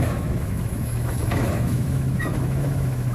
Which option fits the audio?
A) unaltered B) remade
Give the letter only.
B